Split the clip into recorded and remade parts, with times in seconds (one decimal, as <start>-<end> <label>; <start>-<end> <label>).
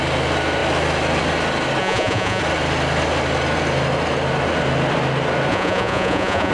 0.0-1.8 recorded; 1.8-2.4 remade; 2.4-5.5 recorded; 5.5-6.5 remade